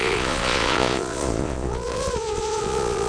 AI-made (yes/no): yes